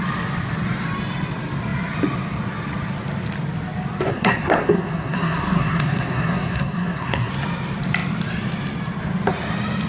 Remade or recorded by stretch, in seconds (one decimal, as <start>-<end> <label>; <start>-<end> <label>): 0.0-4.1 recorded; 4.1-7.3 remade; 7.3-9.9 recorded